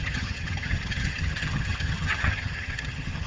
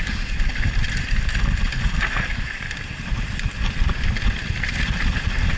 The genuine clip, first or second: second